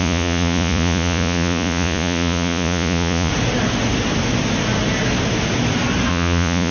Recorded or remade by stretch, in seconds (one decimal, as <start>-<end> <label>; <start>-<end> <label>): 0.0-3.3 remade; 3.3-6.1 recorded; 6.1-6.7 remade